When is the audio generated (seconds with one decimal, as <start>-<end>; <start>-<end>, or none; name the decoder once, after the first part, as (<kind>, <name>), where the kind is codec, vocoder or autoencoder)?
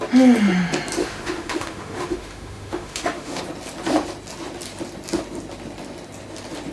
1.0-3.4 (autoencoder, DAC-VAE)